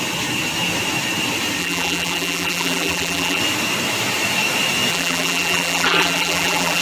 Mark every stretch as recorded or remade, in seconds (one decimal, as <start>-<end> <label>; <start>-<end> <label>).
0.0-1.6 recorded; 1.6-3.4 remade; 3.4-4.9 recorded; 4.9-6.8 remade